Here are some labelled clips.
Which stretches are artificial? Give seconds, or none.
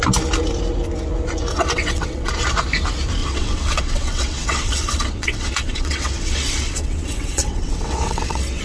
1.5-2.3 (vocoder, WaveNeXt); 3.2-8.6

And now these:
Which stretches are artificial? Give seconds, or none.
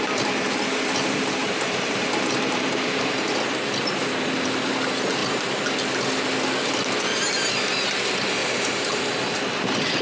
1.4-3.4 (vocoder, BigVGAN v2); 8.4-9.0